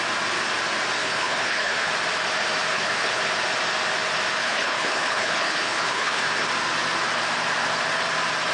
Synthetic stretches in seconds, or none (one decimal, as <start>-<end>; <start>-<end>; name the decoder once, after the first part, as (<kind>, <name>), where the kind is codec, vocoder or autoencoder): 1.0-1.9 (codec, HILCodec); 2.7-3.2; 4.4-6.2

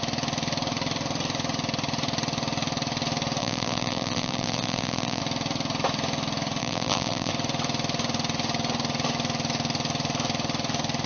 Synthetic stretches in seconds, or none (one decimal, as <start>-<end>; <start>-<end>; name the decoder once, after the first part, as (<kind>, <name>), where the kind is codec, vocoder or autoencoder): 3.4-5.2 (vocoder, BigVGAN v2); 6.6-7.3

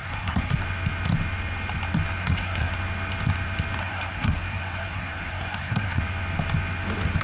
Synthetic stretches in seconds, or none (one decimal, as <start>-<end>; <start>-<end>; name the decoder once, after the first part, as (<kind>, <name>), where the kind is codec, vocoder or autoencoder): 0.0-0.6 (codec, SNAC); 2.2-2.7; 3.8-6.0

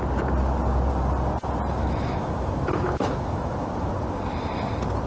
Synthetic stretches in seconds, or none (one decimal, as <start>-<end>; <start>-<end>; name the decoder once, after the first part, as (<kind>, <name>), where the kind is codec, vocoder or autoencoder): 1.8-3.9 (autoencoder, DAC-VAE)